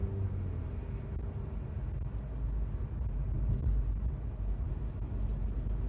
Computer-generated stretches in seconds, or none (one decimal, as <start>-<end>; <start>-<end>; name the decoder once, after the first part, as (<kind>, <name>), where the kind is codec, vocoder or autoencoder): none